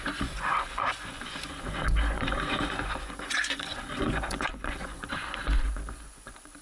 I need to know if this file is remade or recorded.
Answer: remade